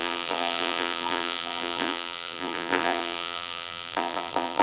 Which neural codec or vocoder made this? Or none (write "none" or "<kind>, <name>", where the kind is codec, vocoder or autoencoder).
vocoder, BigVGAN v2